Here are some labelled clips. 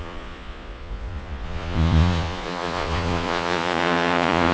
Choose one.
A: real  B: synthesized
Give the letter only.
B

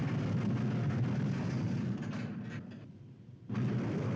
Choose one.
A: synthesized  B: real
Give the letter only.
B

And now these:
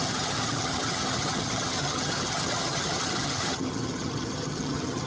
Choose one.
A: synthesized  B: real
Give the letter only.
A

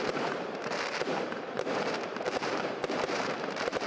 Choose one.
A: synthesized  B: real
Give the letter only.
A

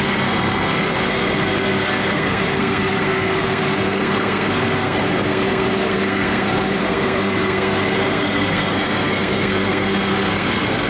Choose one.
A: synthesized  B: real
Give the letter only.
A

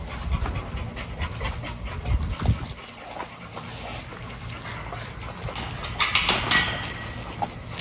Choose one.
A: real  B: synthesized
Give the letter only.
A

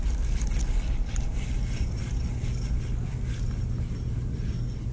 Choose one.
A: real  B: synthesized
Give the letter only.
A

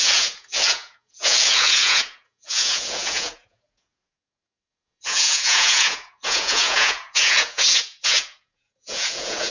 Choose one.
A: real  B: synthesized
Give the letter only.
B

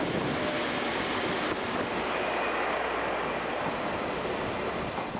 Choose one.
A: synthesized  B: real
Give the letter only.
B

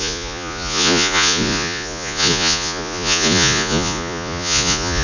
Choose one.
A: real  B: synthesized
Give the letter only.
B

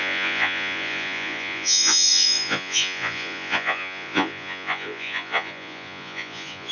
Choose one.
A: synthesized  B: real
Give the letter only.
A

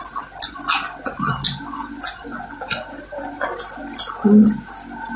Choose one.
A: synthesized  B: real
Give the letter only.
B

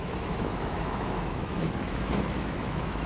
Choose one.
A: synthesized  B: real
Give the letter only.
A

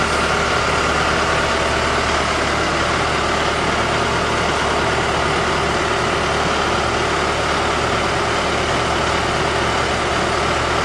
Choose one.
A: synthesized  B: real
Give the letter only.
B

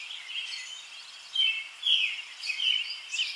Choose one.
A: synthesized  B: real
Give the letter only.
B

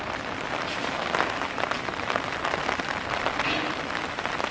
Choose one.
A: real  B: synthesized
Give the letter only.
A